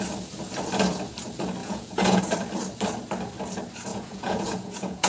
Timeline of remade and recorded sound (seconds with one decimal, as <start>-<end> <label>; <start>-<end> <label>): 0.0-1.6 recorded; 1.6-2.2 remade; 2.2-3.9 recorded; 3.9-5.1 remade